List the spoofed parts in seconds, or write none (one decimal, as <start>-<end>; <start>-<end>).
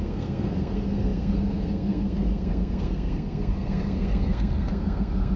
0.0-5.4